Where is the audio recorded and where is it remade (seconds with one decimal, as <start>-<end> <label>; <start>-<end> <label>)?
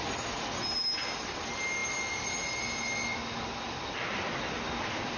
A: 0.0-5.2 recorded